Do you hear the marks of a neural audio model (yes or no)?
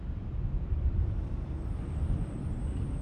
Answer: no